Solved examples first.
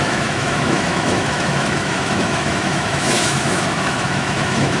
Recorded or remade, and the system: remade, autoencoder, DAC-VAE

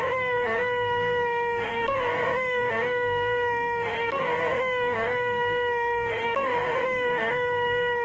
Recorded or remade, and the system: remade, codec, SNAC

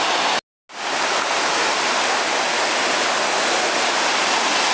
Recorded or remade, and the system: recorded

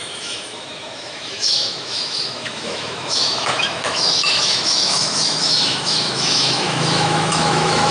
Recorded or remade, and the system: remade, autoencoder, DAC-VAE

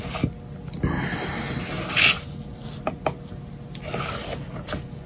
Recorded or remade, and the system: recorded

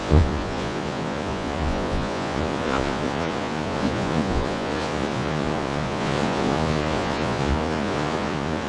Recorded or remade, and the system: remade, vocoder, Vocos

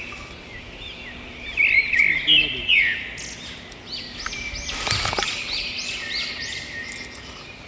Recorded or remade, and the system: recorded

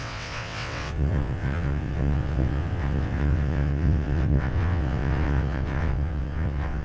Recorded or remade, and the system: remade, vocoder, WaveNeXt